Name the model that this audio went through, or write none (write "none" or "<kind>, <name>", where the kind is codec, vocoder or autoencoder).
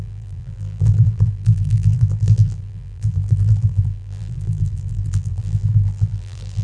vocoder, BigVGAN v2